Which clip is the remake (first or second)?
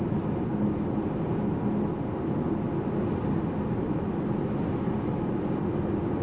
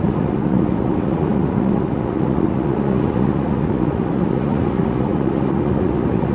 second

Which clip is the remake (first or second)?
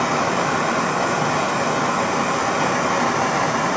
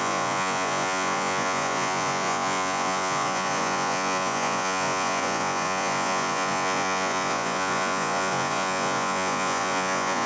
second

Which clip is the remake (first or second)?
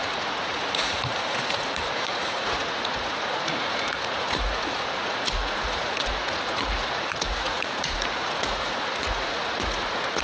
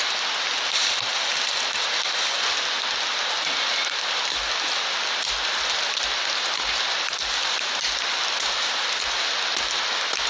first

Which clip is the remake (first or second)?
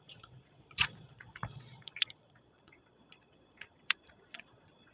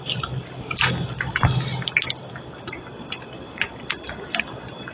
first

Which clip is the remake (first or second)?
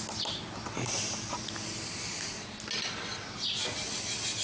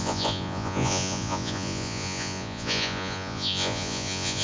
second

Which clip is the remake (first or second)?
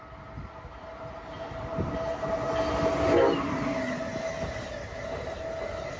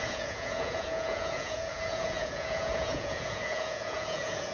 second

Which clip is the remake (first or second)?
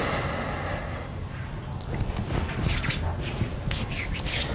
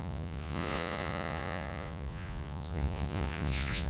second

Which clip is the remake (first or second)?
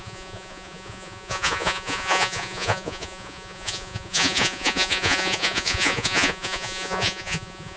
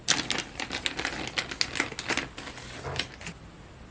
first